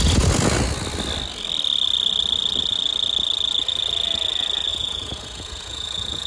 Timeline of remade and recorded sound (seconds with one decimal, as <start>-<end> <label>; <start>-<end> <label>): 0.0-4.7 recorded; 4.7-6.3 remade